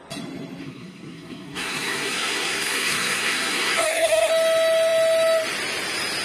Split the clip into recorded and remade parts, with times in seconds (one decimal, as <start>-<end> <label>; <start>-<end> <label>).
0.0-0.6 recorded; 0.6-4.3 remade; 4.3-6.2 recorded